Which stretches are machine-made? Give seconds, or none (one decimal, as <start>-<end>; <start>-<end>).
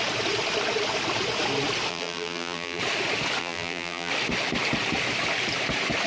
1.9-2.8; 3.4-4.1